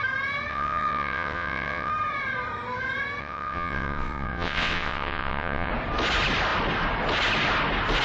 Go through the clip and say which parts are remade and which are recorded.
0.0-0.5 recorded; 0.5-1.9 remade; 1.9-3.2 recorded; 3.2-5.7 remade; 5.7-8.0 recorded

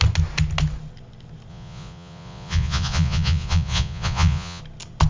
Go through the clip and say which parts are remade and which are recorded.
0.0-1.5 recorded; 1.5-4.6 remade; 4.6-5.1 recorded

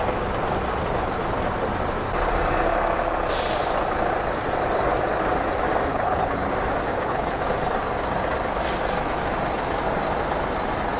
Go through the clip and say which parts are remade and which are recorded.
0.0-5.9 recorded; 5.9-6.5 remade; 6.5-6.9 recorded; 6.9-7.4 remade; 7.4-11.0 recorded

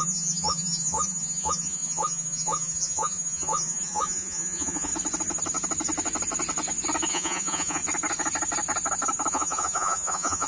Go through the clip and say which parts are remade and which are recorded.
0.0-4.9 remade; 4.9-7.1 recorded; 7.1-7.8 remade; 7.8-9.3 recorded; 9.3-10.5 remade